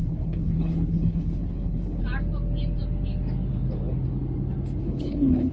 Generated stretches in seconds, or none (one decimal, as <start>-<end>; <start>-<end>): 0.0-2.0; 4.8-5.5